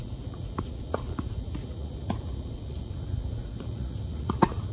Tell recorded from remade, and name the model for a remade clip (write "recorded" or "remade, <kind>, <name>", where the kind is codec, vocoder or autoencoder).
remade, vocoder, Vocos